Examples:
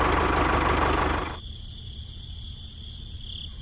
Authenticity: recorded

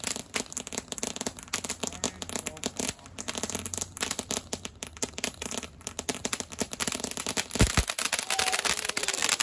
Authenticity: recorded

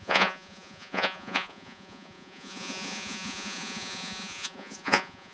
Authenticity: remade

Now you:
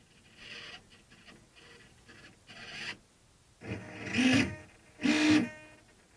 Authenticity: recorded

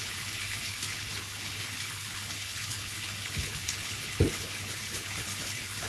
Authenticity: remade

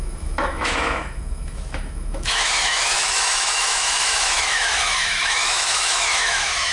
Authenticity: remade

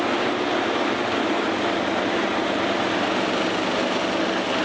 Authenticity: recorded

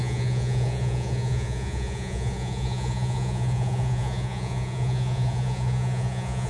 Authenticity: remade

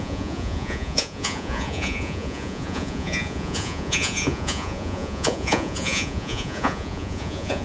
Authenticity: remade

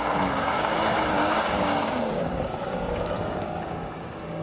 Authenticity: remade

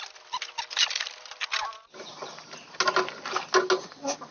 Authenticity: recorded